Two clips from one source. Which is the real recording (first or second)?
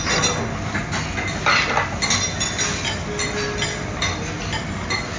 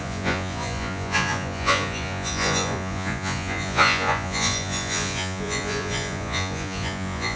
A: first